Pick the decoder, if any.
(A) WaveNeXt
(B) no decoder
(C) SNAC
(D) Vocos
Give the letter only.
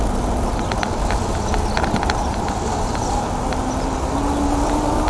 B